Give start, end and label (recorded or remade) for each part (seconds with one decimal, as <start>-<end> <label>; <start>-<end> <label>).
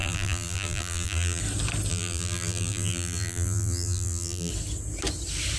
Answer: 0.0-1.4 remade; 1.4-1.9 recorded; 1.9-4.5 remade; 4.5-5.6 recorded